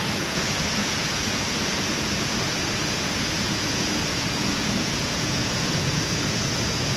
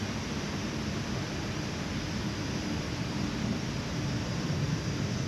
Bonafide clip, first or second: second